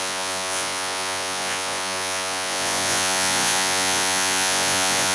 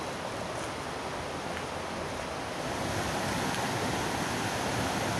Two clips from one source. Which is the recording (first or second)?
second